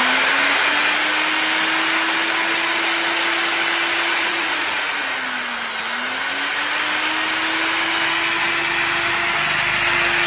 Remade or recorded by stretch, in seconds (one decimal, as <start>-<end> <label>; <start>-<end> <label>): 0.0-4.1 recorded; 4.1-5.0 remade; 5.0-10.3 recorded